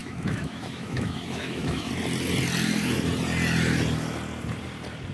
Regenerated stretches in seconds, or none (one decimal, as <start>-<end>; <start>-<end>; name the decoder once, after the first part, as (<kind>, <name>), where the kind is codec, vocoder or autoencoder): 0.0-1.9 (autoencoder, DAC-VAE)